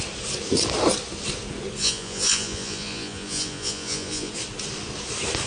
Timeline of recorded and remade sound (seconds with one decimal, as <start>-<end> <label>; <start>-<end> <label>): 0.0-1.8 recorded; 1.8-4.3 remade; 4.3-5.5 recorded